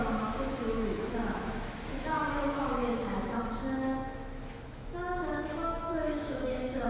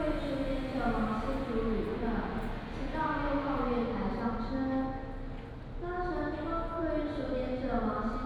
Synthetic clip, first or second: first